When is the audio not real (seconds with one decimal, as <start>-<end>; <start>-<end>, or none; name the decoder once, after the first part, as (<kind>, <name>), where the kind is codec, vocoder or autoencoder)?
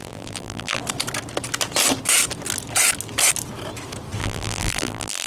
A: 0.0-0.8 (vocoder, BigVGAN v2); 4.2-5.3